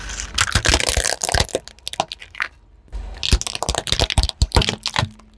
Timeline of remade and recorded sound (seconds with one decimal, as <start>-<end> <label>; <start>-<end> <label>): 0.0-5.4 recorded